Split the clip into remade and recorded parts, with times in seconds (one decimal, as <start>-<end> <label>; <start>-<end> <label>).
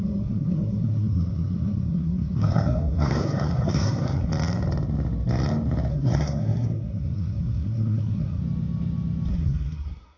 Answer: 0.0-4.3 remade; 4.3-5.9 recorded; 5.9-8.4 remade; 8.4-9.3 recorded; 9.3-10.2 remade